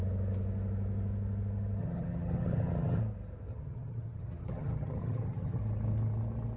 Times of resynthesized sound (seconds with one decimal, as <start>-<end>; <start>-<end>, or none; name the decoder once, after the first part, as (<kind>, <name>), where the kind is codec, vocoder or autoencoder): 1.8-3.0 (vocoder, HiFi-GAN); 3.5-5.6